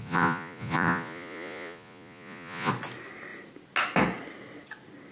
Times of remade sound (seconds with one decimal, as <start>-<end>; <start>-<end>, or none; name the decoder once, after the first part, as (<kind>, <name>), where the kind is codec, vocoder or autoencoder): 0.0-2.7 (vocoder, Vocos)